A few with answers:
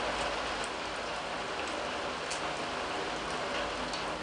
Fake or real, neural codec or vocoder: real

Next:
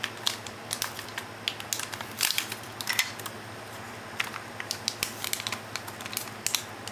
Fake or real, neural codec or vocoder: real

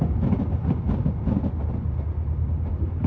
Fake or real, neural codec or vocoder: real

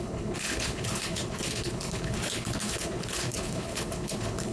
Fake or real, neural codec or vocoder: fake, codec, HILCodec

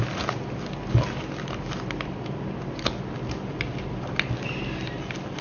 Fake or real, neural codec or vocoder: real